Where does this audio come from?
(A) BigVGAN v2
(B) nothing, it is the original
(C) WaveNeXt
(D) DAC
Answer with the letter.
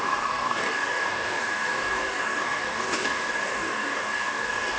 D